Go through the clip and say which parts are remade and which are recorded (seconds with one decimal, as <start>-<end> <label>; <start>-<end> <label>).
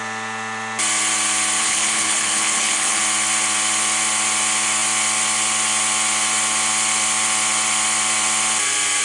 0.0-1.6 recorded; 1.6-3.0 remade; 3.0-9.0 recorded